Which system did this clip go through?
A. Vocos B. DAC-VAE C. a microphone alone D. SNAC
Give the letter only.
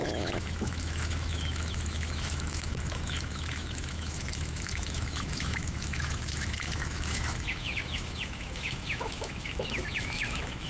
B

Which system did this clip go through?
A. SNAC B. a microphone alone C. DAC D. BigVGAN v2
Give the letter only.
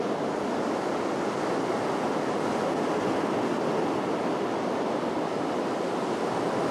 B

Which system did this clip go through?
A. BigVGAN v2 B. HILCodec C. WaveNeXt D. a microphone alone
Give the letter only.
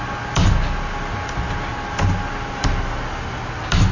D